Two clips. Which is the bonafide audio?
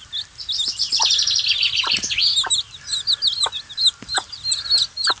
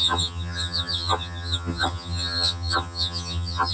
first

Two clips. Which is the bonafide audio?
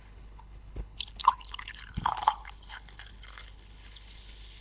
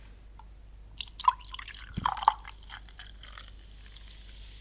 second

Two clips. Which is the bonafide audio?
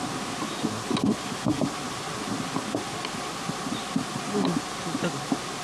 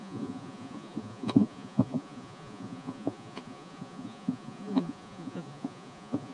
first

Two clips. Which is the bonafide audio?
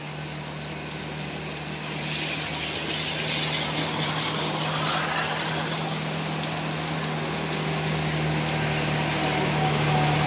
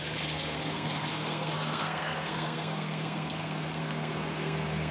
first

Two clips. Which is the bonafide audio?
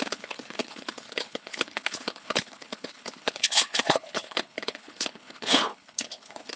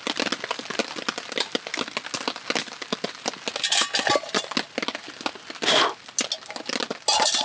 second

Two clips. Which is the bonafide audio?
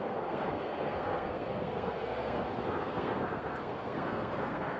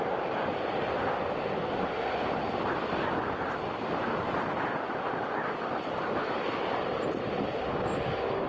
second